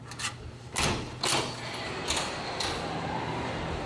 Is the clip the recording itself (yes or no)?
yes